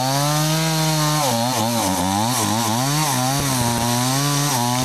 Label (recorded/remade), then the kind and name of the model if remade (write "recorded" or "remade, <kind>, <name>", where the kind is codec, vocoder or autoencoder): recorded